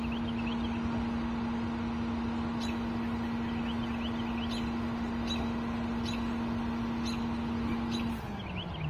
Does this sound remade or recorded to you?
recorded